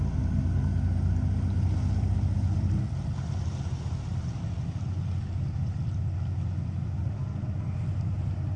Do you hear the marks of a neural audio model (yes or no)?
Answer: no